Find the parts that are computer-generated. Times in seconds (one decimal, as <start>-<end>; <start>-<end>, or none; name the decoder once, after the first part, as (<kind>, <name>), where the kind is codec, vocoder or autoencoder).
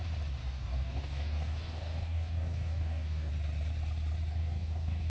0.4-3.3 (codec, DAC); 4.3-5.1